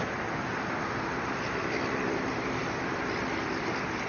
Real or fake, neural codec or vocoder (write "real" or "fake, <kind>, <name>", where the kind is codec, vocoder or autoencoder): real